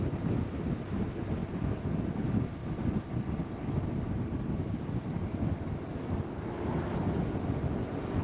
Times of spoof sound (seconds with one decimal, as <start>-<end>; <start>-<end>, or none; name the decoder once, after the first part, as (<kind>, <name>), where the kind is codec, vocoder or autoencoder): none